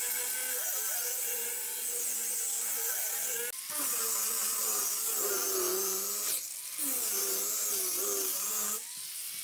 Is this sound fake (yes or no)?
no